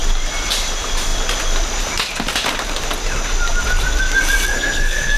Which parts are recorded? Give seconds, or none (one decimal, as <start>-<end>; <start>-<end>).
0.0-4.5